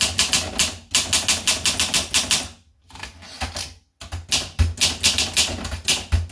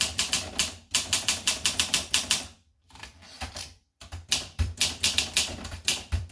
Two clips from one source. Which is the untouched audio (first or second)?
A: first